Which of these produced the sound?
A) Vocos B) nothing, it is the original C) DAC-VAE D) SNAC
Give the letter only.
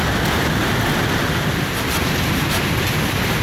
B